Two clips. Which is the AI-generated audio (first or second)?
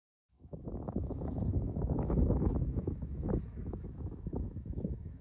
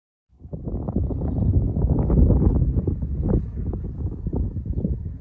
first